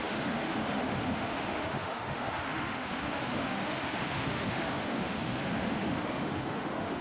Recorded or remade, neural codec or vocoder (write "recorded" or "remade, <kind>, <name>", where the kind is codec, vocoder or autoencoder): remade, autoencoder, DAC-VAE